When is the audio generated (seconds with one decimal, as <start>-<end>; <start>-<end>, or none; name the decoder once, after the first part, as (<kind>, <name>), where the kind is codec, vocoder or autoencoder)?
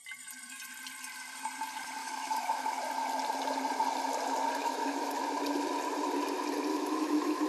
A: 2.0-2.8 (autoencoder, DAC-VAE); 4.6-5.2; 6.7-7.5